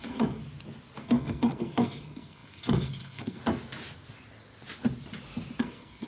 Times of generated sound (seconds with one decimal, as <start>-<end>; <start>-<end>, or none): 0.0-0.4; 1.0-3.4; 5.6-6.1